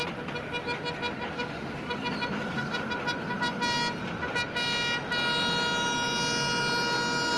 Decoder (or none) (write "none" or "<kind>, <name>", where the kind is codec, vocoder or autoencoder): none